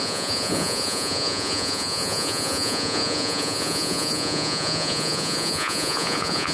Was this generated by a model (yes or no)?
yes